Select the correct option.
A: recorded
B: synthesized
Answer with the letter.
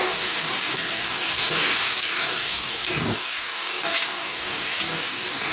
B